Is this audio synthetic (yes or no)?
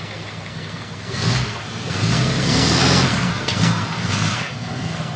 yes